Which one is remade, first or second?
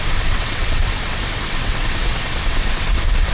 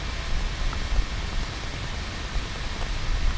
first